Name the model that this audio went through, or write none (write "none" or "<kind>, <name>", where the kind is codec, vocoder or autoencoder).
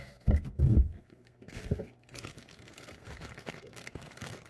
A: codec, SNAC